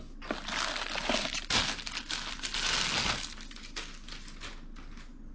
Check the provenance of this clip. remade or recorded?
recorded